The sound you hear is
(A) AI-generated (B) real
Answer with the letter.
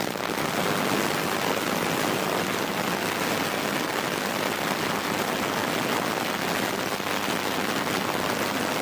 B